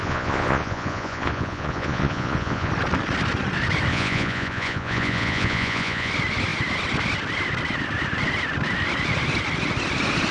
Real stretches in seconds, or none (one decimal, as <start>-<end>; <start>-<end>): 2.7-3.9; 6.1-10.3